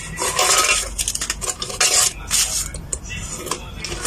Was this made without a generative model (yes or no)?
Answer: yes